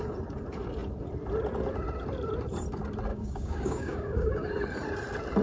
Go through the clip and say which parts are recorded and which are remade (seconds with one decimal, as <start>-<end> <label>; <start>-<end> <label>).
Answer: 0.0-3.1 recorded; 3.1-4.5 remade; 4.5-5.4 recorded

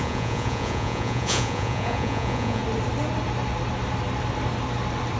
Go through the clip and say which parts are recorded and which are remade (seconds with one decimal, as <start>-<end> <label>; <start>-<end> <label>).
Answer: 0.0-2.6 remade; 2.6-5.2 recorded

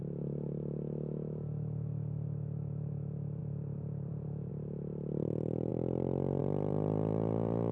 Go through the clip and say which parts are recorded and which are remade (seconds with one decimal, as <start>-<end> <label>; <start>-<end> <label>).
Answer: 0.0-5.7 remade; 5.7-6.4 recorded; 6.4-7.7 remade

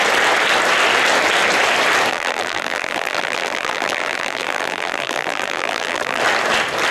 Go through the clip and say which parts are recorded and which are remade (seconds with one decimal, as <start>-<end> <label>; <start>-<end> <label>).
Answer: 0.0-2.1 recorded; 2.1-6.2 remade; 6.2-6.9 recorded